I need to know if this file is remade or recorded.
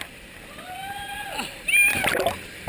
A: remade